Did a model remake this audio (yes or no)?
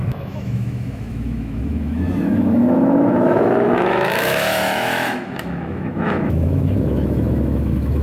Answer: yes